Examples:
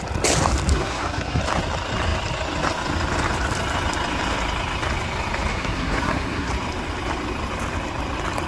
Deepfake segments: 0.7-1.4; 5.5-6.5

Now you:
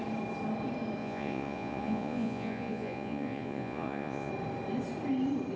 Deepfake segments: 1.0-4.3

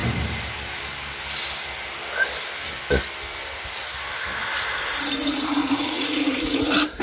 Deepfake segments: 5.6-6.6